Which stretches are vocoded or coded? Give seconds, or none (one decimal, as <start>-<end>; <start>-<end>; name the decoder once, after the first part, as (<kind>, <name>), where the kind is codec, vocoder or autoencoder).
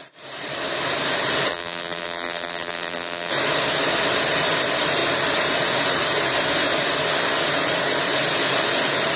1.5-3.3 (vocoder, BigVGAN v2)